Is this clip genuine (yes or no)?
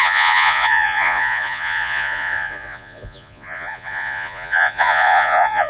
no